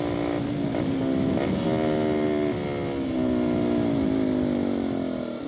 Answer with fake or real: real